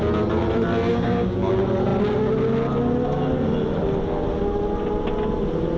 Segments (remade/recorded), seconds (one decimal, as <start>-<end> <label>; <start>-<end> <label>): 0.0-0.9 recorded; 0.9-1.5 remade; 1.5-5.8 recorded